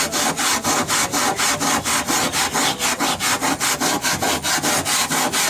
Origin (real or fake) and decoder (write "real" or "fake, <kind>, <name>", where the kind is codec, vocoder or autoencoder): real